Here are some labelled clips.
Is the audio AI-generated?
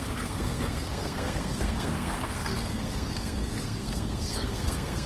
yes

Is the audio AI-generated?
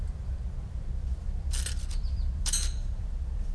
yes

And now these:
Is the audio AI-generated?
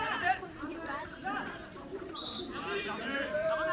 yes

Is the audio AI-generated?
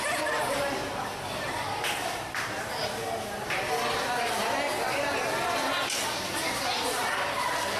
no